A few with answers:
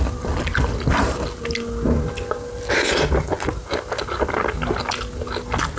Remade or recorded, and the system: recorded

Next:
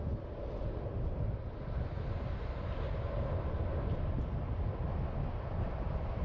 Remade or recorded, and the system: recorded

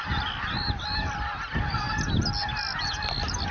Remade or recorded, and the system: recorded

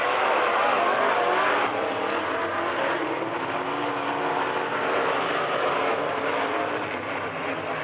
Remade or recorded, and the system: recorded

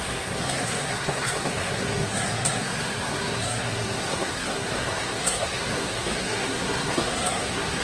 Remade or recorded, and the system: remade, codec, SNAC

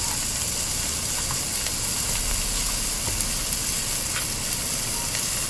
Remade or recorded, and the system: recorded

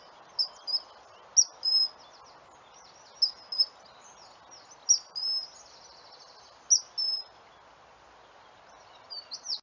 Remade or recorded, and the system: recorded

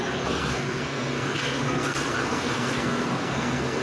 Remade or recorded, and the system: remade, codec, SNAC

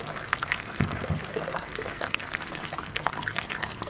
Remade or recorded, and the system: remade, codec, SNAC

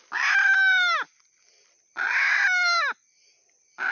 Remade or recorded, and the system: recorded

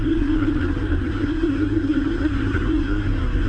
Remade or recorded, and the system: remade, codec, SNAC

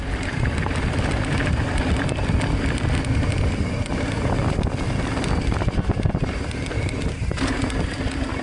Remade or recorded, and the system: recorded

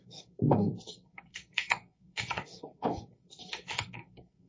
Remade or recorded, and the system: remade, codec, SNAC